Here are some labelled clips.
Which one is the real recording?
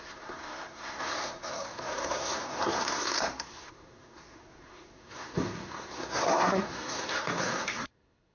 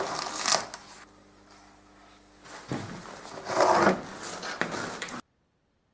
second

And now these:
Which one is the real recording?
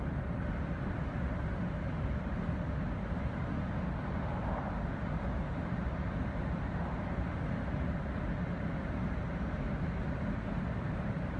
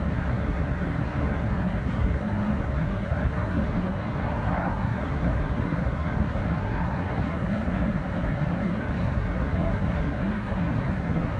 first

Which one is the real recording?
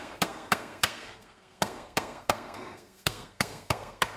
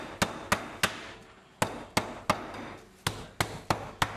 second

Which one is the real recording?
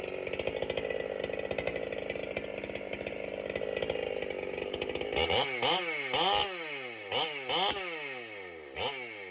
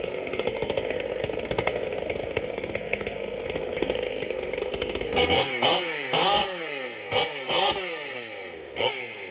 first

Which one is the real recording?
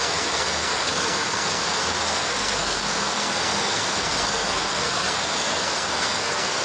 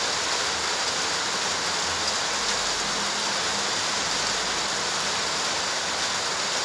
second